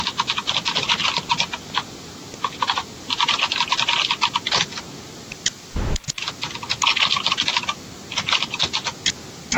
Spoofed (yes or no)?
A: no